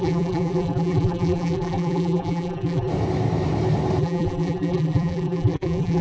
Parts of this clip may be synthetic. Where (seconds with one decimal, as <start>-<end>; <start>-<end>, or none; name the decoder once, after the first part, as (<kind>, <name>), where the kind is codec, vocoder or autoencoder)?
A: 0.0-2.9 (vocoder, BigVGAN v2); 4.0-6.0